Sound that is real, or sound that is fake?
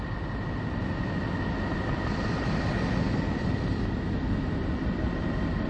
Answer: real